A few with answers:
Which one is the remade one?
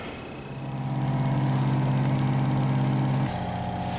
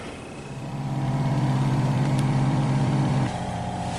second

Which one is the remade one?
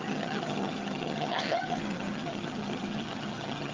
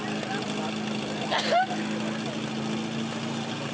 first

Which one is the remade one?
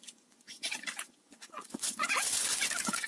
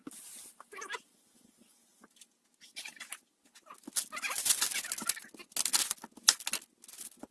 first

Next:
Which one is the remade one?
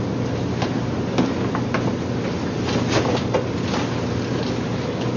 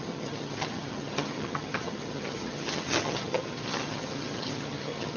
second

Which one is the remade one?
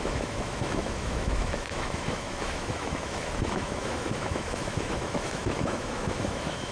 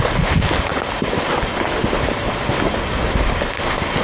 first